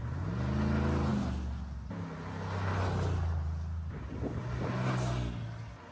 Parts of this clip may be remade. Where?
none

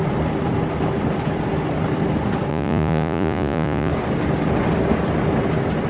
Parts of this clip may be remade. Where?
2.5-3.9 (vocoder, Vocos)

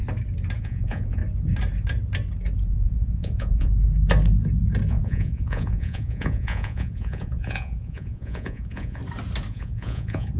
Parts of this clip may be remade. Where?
0.6-1.2 (vocoder, Vocos); 2.7-3.7; 4.9-9.0; 9.5-10.4